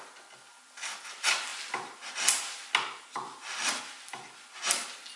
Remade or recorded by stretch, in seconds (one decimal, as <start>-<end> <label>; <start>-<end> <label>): 0.0-5.2 recorded